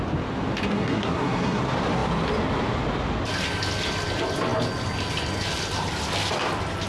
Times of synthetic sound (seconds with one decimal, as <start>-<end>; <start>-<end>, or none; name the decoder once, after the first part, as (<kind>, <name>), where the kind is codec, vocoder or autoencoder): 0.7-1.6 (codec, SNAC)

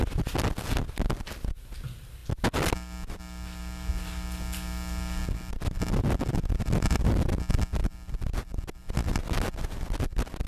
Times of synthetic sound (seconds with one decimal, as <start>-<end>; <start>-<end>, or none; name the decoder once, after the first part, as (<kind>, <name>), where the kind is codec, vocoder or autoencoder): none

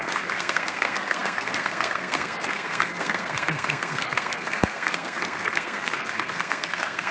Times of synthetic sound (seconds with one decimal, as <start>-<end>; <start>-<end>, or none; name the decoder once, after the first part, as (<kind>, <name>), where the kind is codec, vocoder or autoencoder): 0.0-7.1 (codec, SNAC)